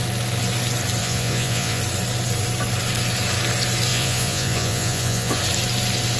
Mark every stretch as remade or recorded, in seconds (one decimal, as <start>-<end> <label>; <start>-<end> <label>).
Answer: 0.0-1.0 recorded; 1.0-1.8 remade; 1.8-3.9 recorded; 3.9-5.4 remade; 5.4-6.2 recorded